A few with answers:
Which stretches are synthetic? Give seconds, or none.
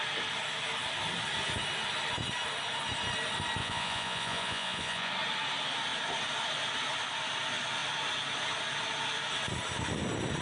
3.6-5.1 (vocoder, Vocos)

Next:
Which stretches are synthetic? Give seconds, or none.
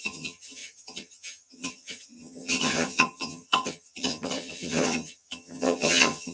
0.0-6.3 (vocoder, HiFi-GAN)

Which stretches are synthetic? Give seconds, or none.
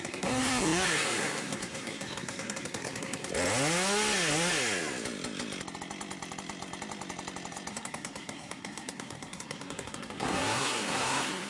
0.0-3.3 (codec, SNAC); 7.7-11.5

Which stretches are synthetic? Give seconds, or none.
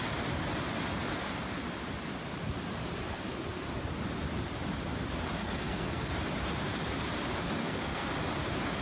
5.4-6.1 (codec, SNAC); 7.6-8.1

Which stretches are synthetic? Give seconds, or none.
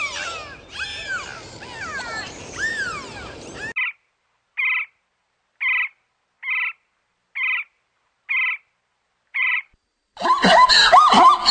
1.9-3.5 (vocoder, BigVGAN v2); 9.3-10.7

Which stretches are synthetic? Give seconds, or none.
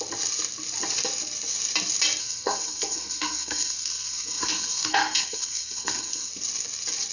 2.2-6.3 (codec, SNAC)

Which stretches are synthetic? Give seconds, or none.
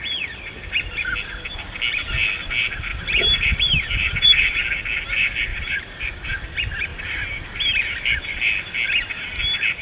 2.9-4.4 (vocoder, BigVGAN v2); 5.5-6.1; 6.9-7.6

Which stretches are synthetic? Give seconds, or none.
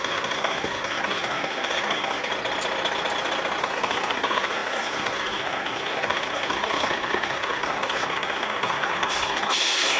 0.0-2.3 (codec, SNAC); 3.6-10.0